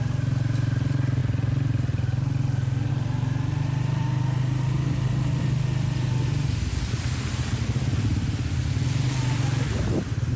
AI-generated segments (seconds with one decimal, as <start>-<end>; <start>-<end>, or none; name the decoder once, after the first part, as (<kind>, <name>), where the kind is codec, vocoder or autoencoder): none